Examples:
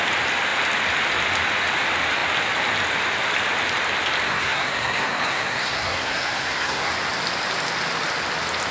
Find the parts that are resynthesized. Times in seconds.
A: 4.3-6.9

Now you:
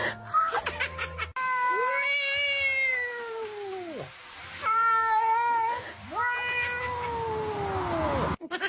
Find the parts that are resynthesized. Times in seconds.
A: none

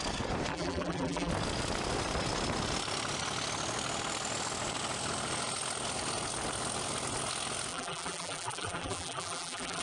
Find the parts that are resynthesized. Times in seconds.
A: 0.5-1.3; 7.7-9.8

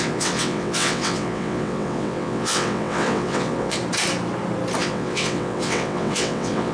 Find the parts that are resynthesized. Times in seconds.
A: 0.0-3.8; 4.8-6.7

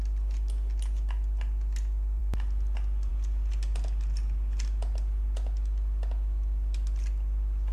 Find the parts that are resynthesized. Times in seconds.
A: none

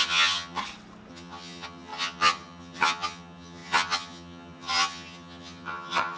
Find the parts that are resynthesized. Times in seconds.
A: 0.0-0.6; 1.1-6.2

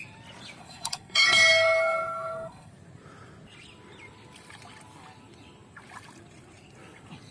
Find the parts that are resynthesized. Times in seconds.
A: 0.6-2.7